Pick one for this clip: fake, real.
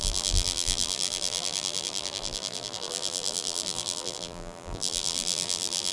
fake